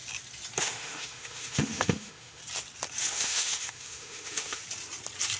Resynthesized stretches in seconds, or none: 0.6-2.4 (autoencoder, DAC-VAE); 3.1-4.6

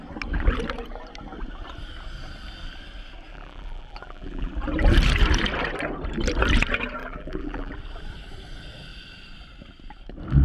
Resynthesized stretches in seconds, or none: 3.3-4.5 (vocoder, BigVGAN v2); 7.0-7.7

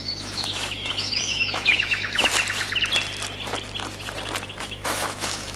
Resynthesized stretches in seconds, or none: 0.0-2.3 (autoencoder, DAC-VAE); 4.6-5.6

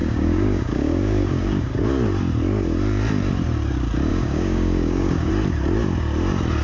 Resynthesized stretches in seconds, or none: 0.0-1.8 (codec, DAC); 4.1-5.3